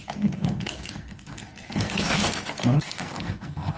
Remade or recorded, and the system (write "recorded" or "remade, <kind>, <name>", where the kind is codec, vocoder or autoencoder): remade, codec, SNAC